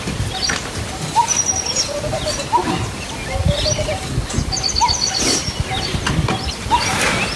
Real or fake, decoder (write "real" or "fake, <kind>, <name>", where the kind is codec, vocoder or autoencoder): real